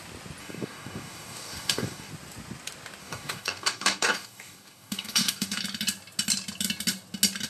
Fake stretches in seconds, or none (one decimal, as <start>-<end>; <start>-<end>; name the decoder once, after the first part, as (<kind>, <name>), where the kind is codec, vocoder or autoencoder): 0.4-2.1 (codec, DAC); 3.0-5.6